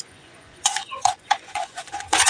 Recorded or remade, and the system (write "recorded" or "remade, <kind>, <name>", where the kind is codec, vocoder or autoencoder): remade, vocoder, Vocos